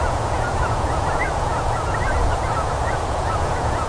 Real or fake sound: fake